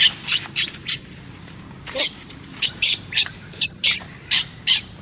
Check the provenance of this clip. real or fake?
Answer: fake